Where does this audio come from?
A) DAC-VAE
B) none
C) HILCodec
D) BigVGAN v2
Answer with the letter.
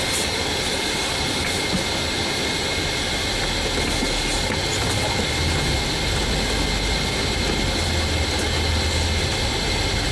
B